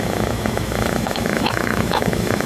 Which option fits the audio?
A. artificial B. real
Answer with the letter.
A